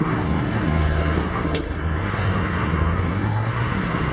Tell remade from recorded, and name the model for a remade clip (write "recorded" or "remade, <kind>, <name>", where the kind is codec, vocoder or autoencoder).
remade, codec, SNAC